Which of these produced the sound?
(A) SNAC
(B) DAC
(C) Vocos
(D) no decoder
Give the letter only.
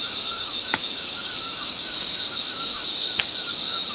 B